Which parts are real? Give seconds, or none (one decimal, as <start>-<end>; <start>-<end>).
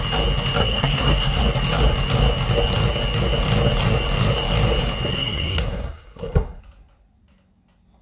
0.0-0.6; 1.4-5.1; 6.6-8.0